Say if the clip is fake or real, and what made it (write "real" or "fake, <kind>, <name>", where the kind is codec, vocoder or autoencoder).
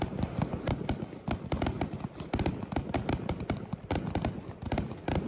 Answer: real